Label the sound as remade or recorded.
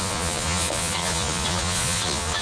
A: remade